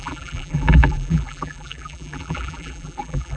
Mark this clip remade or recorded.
remade